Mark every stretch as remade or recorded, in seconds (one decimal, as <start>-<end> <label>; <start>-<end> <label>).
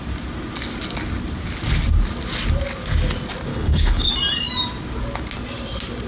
0.0-3.5 recorded; 3.5-4.1 remade; 4.1-6.1 recorded